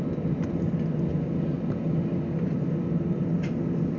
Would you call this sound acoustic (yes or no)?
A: yes